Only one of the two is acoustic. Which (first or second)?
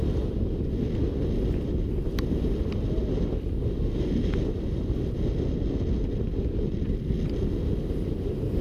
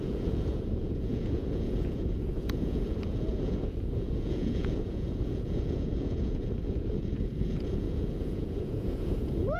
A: first